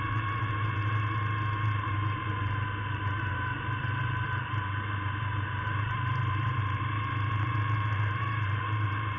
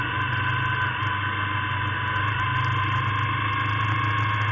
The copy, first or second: first